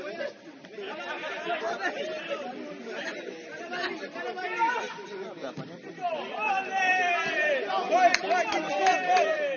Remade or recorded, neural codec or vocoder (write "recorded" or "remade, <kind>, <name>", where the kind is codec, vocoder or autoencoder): recorded